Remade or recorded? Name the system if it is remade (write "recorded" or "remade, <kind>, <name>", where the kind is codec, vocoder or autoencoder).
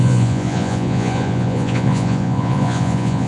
remade, vocoder, Vocos